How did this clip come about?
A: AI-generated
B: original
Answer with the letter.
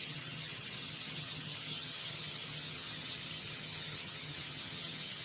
A